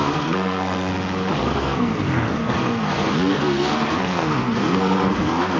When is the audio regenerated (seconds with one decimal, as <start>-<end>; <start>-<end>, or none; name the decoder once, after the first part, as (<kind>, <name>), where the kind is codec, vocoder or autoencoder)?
0.0-0.9 (codec, SNAC); 1.4-5.6